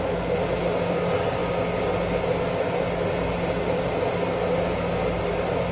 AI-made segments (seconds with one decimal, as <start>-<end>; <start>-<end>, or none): none